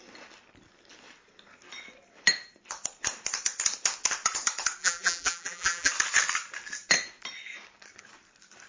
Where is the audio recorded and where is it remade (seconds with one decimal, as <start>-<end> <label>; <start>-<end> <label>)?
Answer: 0.0-4.8 recorded; 4.8-5.9 remade; 5.9-8.7 recorded